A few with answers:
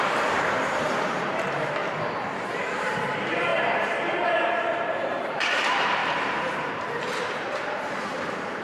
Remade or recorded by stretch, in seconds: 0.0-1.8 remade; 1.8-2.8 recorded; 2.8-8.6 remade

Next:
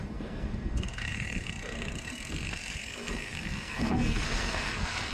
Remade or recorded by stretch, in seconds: 0.0-5.1 remade

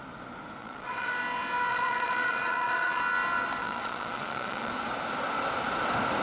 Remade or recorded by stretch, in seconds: 0.0-0.6 recorded; 0.6-1.1 remade; 1.1-1.7 recorded; 1.7-3.0 remade; 3.0-3.6 recorded; 3.6-4.7 remade; 4.7-6.2 recorded